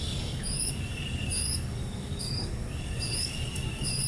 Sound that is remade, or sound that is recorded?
remade